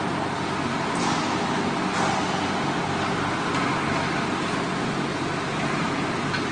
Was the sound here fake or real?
real